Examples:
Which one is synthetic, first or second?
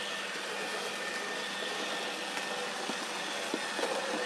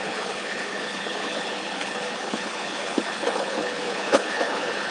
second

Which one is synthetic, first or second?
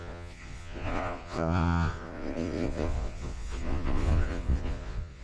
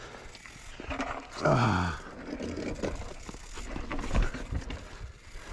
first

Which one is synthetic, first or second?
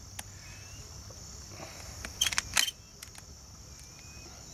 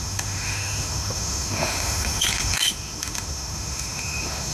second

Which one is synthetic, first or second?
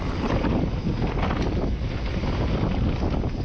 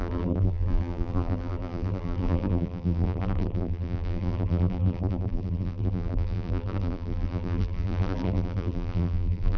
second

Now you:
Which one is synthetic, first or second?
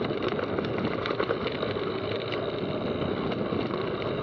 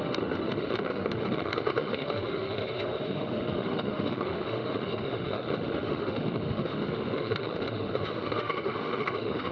second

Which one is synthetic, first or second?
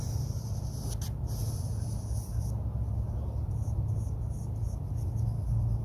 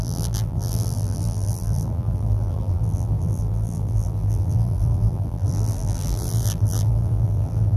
second